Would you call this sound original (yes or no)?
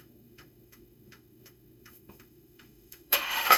no